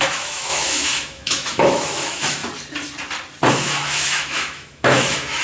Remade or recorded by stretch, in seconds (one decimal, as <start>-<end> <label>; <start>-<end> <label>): 0.0-2.4 remade; 2.4-3.5 recorded; 3.5-5.4 remade